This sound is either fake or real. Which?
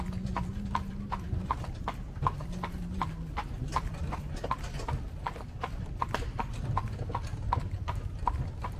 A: real